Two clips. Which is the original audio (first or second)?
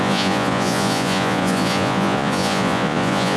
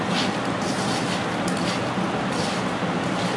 second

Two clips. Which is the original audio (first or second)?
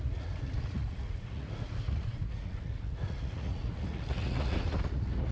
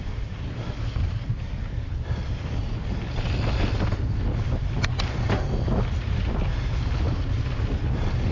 second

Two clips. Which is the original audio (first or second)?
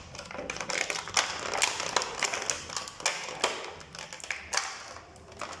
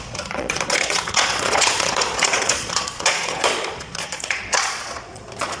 first